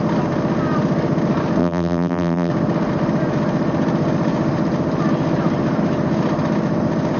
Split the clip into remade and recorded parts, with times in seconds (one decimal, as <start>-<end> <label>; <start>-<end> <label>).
0.0-1.6 recorded; 1.6-2.5 remade; 2.5-7.2 recorded